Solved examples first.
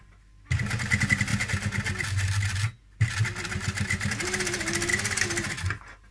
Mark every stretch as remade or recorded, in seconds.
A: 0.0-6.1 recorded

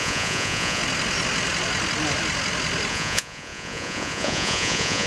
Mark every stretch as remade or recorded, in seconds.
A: 0.0-0.8 remade; 0.8-2.9 recorded; 2.9-5.1 remade

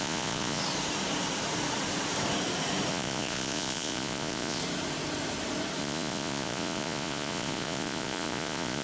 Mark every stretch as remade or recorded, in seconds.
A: 0.0-0.6 remade; 0.6-2.9 recorded; 2.9-4.6 remade; 4.6-5.8 recorded; 5.8-8.8 remade

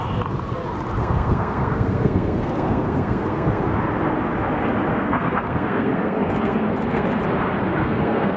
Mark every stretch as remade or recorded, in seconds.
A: 0.0-1.0 recorded; 1.0-3.6 remade; 3.6-4.9 recorded; 4.9-7.2 remade; 7.2-7.7 recorded; 7.7-8.4 remade